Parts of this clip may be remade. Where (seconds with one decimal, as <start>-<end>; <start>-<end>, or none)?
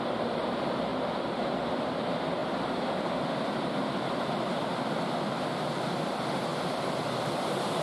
0.0-2.4; 3.3-7.8